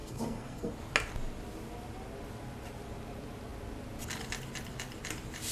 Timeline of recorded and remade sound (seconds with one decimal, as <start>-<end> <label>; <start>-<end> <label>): 0.0-0.7 remade; 0.7-5.5 recorded